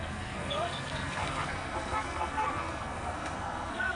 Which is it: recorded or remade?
remade